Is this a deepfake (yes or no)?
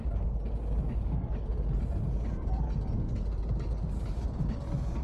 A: no